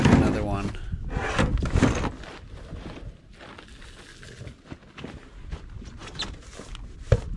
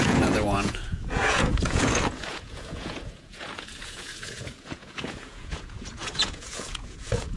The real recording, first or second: first